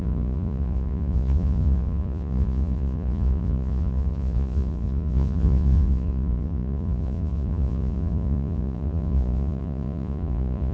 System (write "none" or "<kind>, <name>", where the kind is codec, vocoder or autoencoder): vocoder, Vocos